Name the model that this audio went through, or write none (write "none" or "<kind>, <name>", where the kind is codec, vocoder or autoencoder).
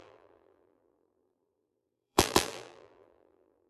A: vocoder, BigVGAN v2